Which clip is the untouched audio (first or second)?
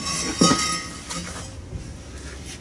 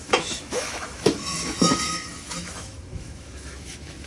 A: first